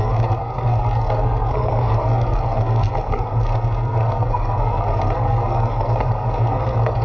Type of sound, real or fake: fake